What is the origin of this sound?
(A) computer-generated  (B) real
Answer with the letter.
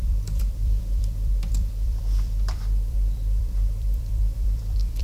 A